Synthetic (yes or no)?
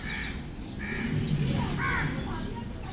no